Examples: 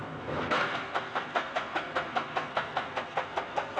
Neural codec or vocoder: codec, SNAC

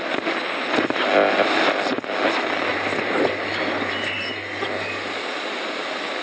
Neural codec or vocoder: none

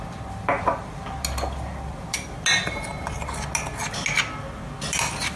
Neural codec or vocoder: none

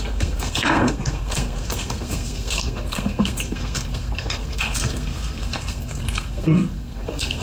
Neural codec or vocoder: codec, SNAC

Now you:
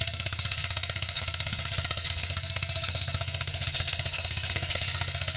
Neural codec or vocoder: codec, SNAC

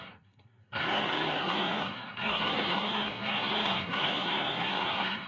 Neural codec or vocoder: codec, SNAC